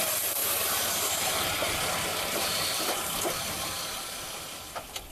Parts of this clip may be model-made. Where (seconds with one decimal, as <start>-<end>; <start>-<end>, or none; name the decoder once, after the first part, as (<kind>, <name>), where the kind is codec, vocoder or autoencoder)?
0.4-0.9 (vocoder, BigVGAN v2); 2.1-3.6